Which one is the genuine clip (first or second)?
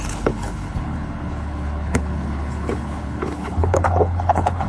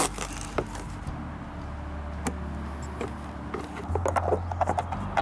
second